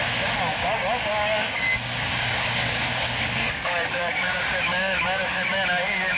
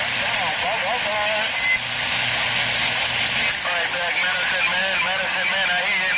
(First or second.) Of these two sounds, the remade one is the first